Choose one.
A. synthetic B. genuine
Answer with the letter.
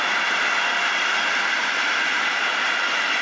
B